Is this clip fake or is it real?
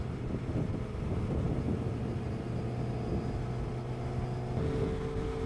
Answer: real